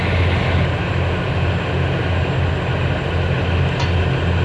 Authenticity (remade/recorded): recorded